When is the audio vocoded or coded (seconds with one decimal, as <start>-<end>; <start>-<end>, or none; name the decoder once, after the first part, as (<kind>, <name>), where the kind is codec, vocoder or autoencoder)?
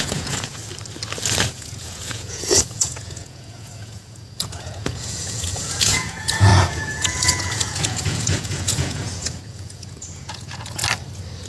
0.0-0.6 (vocoder, Vocos); 1.5-10.8